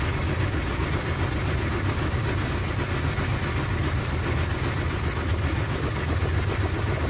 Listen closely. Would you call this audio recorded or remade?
recorded